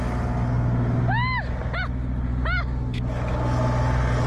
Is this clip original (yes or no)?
yes